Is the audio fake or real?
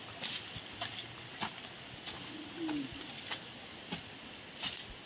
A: real